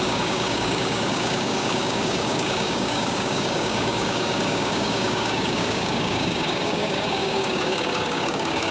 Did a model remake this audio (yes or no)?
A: yes